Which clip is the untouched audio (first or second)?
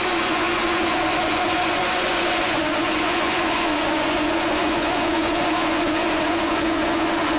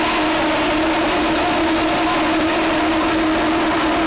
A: second